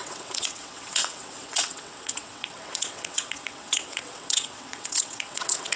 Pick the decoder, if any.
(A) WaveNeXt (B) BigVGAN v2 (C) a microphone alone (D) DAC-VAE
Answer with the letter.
A